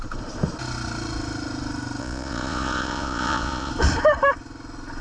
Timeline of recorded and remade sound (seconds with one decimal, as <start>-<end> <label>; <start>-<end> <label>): 0.0-2.0 recorded; 2.0-3.7 remade; 3.7-5.0 recorded